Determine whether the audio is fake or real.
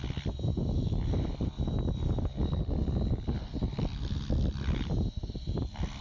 real